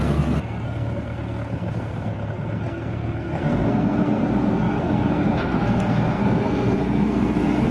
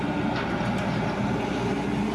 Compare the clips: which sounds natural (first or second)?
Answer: second